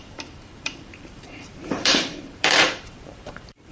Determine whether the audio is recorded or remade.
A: remade